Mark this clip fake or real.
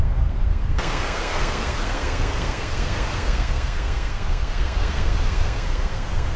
fake